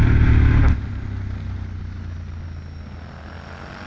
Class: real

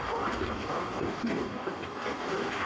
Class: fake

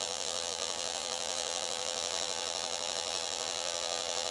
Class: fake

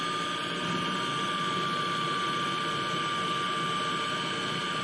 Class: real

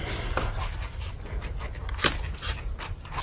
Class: real